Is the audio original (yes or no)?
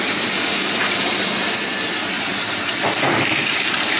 no